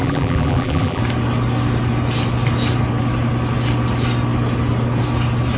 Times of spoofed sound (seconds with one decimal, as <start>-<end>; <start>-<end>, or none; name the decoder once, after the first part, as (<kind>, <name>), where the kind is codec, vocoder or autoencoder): 0.0-1.0 (vocoder, BigVGAN v2)